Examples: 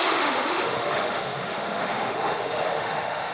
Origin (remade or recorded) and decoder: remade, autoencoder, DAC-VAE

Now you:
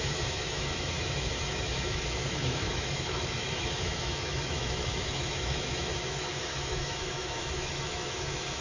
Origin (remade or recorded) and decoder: remade, autoencoder, DAC-VAE